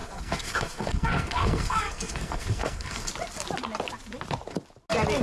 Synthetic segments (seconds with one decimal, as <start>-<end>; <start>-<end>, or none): 0.0-3.1